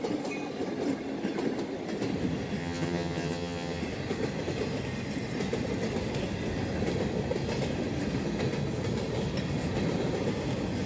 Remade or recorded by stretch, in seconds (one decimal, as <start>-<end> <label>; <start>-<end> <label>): 0.0-2.6 recorded; 2.6-3.8 remade; 3.8-10.9 recorded